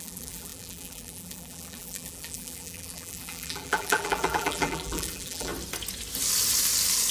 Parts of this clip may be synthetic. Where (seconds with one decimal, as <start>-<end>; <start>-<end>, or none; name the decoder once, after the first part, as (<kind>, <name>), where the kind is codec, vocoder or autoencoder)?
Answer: 0.0-5.5 (vocoder, BigVGAN v2)